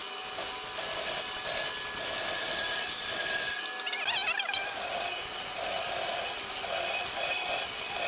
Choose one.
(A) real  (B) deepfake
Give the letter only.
A